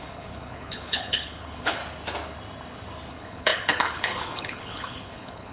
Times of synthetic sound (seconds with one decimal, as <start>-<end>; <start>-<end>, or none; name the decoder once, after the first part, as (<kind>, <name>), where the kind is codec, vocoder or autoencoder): 0.0-1.8 (codec, HILCodec); 3.1-5.5